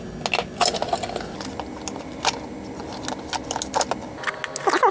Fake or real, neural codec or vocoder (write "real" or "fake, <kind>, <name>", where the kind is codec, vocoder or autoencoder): real